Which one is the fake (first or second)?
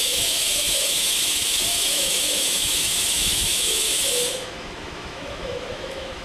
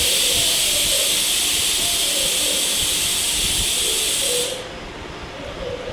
first